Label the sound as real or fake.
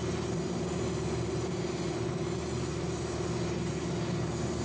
real